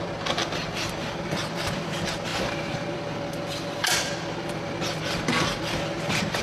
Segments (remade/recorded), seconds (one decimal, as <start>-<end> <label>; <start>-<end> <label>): 0.0-6.4 remade